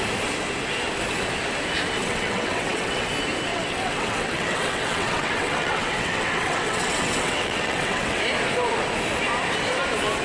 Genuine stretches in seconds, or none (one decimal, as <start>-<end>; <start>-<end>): 0.0-2.0; 3.1-3.5; 8.2-10.2